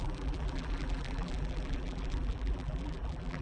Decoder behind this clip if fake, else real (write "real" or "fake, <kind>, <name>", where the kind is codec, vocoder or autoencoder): fake, vocoder, BigVGAN v2